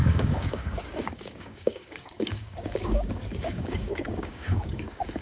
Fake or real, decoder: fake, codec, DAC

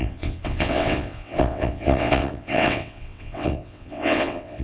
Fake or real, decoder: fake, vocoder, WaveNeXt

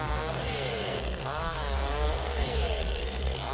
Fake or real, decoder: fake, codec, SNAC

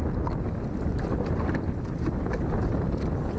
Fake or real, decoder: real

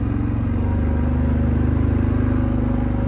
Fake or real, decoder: real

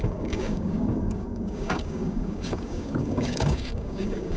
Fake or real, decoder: fake, codec, DAC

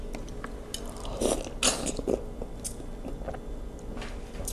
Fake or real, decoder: real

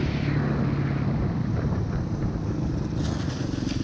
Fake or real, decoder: real